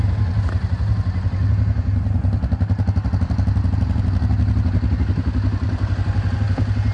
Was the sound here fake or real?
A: real